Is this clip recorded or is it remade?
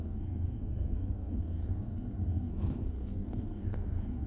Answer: remade